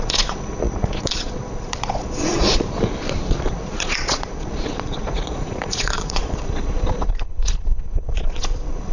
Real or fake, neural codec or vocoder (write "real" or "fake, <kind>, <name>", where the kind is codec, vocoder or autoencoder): fake, vocoder, Vocos